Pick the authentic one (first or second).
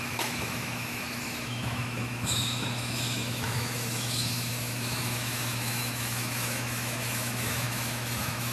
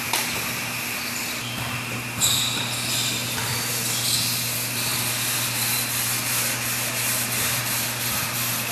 second